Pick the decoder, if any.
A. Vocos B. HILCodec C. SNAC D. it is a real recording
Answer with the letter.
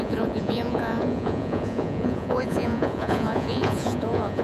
A